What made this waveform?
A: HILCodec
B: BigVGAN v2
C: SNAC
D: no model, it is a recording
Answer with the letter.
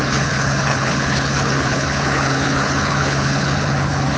A